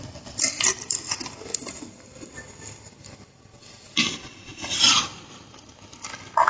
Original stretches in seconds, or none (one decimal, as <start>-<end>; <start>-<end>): 0.0-4.5; 5.5-6.5